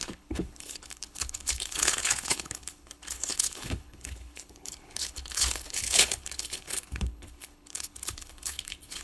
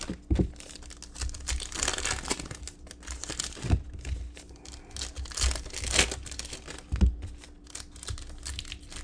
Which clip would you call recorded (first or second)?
second